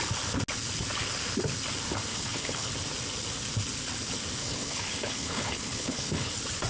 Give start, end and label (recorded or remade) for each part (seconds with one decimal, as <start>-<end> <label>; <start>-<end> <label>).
0.0-2.1 recorded; 2.1-2.7 remade; 2.7-4.4 recorded; 4.4-6.3 remade; 6.3-6.7 recorded